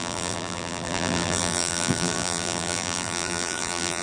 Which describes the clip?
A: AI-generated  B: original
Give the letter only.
A